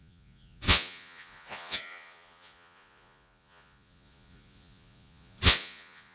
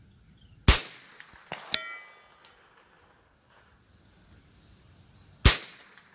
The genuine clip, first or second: second